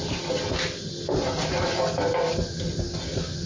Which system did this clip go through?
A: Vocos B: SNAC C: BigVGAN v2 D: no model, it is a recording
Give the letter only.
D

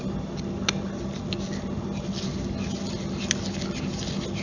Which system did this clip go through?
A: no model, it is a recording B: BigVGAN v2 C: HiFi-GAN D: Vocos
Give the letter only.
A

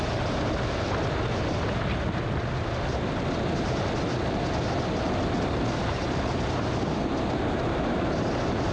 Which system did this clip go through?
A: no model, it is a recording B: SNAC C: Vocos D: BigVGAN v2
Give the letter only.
A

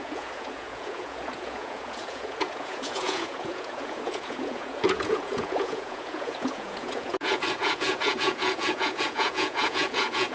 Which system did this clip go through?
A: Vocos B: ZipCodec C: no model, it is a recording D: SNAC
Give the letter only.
A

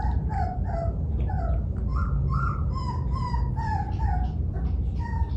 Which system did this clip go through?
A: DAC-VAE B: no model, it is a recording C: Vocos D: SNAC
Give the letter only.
B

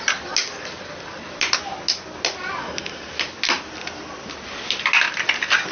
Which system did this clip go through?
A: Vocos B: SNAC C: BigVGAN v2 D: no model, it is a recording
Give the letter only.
D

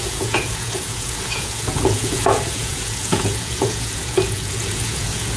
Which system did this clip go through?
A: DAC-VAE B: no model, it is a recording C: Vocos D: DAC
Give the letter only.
C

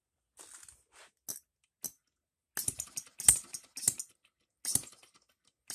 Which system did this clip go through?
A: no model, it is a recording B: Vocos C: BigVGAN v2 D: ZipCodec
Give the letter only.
A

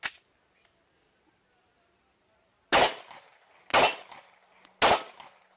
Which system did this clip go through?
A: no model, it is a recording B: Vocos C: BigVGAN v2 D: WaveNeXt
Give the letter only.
A